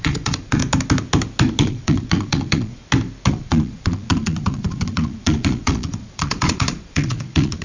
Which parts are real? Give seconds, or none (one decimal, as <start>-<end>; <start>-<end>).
0.6-1.6; 2.8-3.3